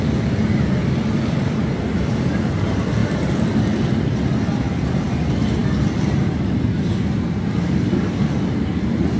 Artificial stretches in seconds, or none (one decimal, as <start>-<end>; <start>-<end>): 0.8-1.5